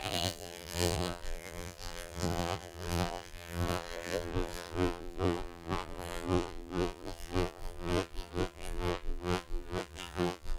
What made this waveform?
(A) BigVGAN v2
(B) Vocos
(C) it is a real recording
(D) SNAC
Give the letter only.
A